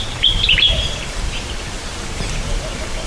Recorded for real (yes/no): no